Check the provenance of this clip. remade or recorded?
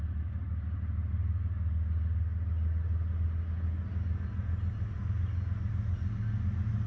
recorded